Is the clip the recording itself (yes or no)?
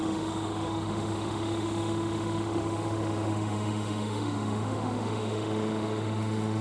no